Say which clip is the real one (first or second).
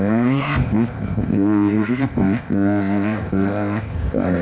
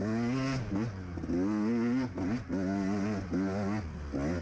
second